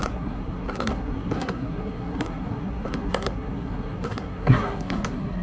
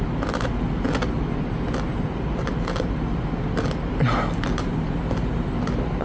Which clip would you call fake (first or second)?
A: first